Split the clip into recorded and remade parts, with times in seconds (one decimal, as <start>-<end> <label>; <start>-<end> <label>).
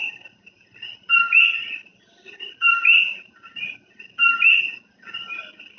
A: 0.0-5.8 recorded